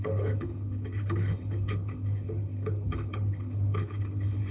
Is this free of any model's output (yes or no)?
no